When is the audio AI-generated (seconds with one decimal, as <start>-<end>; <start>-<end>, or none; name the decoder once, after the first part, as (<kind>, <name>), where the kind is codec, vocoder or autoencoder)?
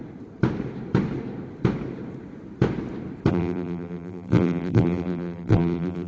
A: 3.3-6.1 (vocoder, BigVGAN v2)